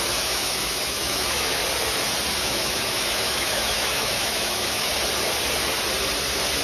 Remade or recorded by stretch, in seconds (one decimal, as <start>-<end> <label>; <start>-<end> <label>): 0.0-1.6 remade; 1.6-2.4 recorded; 2.4-4.9 remade; 4.9-6.6 recorded